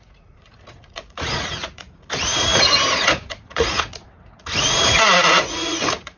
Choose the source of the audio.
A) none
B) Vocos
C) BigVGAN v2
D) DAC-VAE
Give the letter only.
B